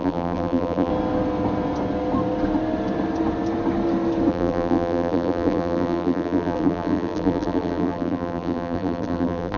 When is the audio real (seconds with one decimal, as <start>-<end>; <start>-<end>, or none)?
0.9-4.3